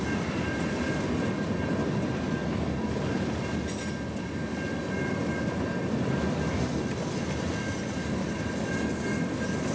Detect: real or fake real